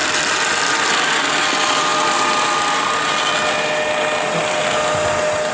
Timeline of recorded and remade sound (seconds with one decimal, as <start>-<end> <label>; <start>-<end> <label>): 0.0-5.5 recorded